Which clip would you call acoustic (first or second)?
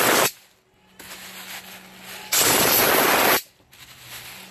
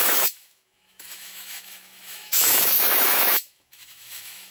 first